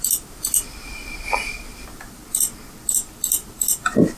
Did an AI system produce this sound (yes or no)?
no